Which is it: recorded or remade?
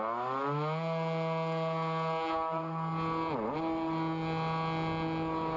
recorded